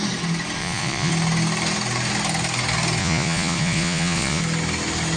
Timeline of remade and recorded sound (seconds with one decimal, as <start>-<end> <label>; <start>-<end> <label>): 0.0-0.6 recorded; 0.6-1.1 remade; 1.1-3.0 recorded; 3.0-4.4 remade; 4.4-5.2 recorded